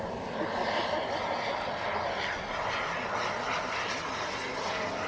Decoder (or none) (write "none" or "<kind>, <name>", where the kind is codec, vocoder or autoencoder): none